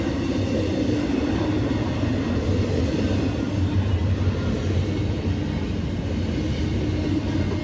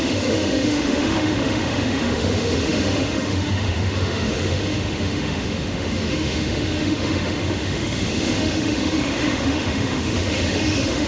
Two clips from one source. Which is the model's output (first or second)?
second